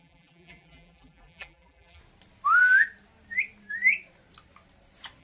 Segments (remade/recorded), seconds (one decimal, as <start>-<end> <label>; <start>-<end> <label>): 0.0-2.0 remade; 2.0-5.2 recorded